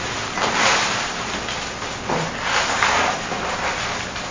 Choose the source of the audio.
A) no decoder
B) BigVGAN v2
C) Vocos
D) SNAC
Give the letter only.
A